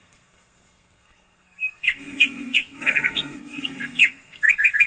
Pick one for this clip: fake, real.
fake